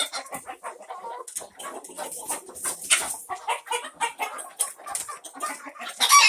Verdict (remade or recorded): recorded